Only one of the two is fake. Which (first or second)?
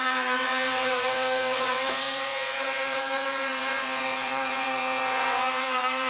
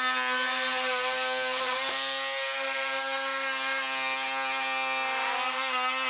first